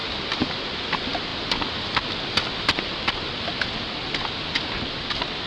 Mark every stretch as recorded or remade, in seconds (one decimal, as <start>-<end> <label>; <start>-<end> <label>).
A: 0.0-5.5 recorded